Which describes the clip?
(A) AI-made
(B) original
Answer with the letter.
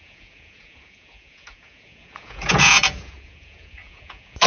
A